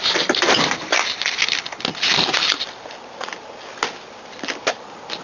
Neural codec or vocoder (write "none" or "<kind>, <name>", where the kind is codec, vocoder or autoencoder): none